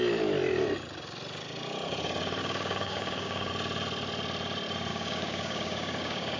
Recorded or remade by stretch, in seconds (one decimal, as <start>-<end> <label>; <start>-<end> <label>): 0.0-2.4 recorded; 2.4-3.5 remade; 3.5-4.9 recorded; 4.9-6.4 remade